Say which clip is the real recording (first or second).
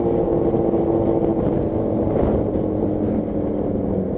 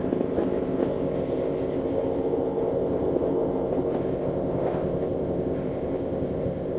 first